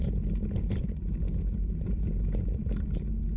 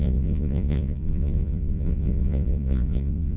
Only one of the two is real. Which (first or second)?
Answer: first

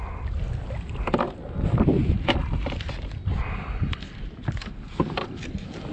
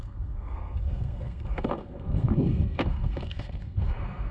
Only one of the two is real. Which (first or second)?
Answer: first